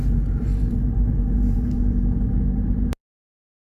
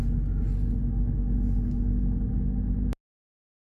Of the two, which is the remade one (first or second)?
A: first